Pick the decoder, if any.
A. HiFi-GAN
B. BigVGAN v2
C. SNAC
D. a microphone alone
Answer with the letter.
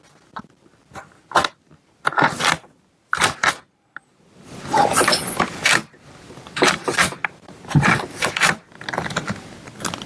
D